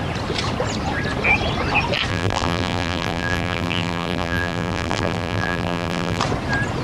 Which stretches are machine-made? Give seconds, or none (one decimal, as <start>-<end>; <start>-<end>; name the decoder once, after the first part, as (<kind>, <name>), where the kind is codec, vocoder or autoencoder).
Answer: 2.1-6.2 (vocoder, BigVGAN v2)